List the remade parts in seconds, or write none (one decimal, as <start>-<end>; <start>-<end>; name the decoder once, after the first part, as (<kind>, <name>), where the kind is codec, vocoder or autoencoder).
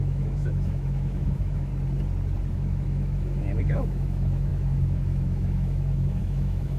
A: 0.0-1.7 (autoencoder, DAC-VAE); 2.5-6.8